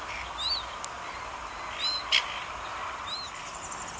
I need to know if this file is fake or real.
real